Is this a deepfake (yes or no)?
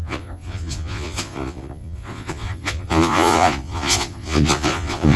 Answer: yes